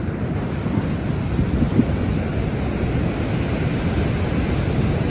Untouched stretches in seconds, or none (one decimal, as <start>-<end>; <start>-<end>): 0.0-5.1